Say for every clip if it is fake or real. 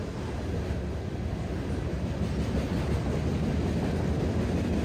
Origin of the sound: real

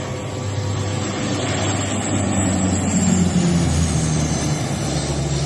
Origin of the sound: real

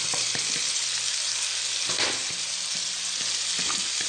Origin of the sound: real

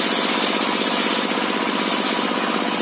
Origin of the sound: real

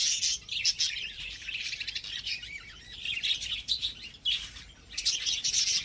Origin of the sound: real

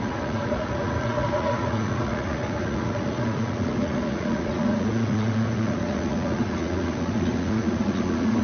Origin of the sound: fake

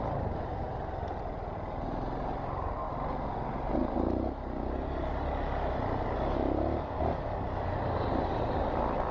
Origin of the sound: real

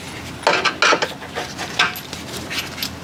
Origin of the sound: real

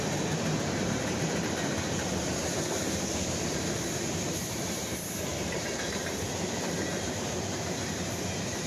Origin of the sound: fake